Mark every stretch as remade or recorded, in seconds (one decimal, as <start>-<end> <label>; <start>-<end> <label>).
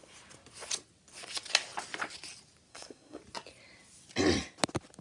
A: 0.0-2.7 recorded; 2.7-3.2 remade; 3.2-5.0 recorded